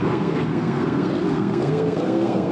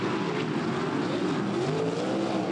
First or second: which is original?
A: second